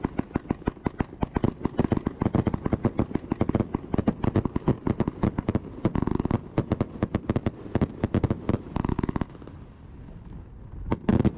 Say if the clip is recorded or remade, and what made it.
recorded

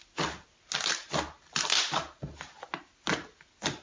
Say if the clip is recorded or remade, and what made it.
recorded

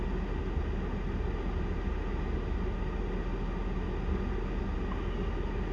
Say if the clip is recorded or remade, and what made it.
recorded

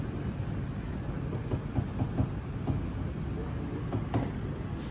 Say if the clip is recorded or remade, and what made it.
recorded